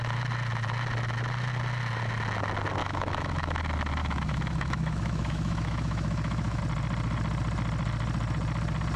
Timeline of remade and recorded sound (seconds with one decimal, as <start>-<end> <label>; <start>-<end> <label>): 0.0-2.8 recorded; 2.8-3.6 remade; 3.6-4.0 recorded; 4.0-6.6 remade; 6.6-9.0 recorded